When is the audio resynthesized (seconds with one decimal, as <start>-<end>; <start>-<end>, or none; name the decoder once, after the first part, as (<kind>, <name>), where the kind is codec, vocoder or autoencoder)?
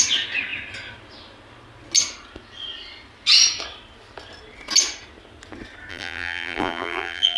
5.9-7.4 (vocoder, BigVGAN v2)